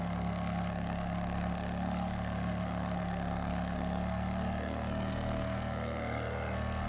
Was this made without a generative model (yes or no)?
no